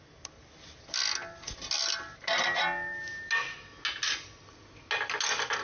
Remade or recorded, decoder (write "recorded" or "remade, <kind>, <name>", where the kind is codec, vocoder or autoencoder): recorded